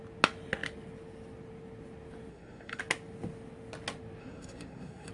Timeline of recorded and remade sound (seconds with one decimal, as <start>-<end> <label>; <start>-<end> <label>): 0.0-2.3 recorded; 2.3-2.8 remade; 2.8-4.2 recorded; 4.2-5.1 remade